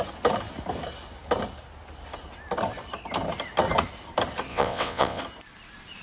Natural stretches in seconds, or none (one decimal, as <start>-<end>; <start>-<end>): 0.0-4.5; 5.2-6.0